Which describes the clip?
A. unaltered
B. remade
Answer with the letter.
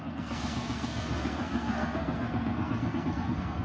B